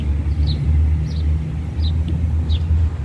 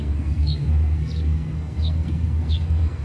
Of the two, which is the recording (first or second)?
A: first